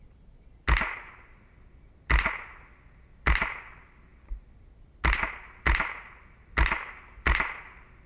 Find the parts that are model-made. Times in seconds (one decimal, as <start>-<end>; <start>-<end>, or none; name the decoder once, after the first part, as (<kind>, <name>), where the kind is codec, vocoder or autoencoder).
none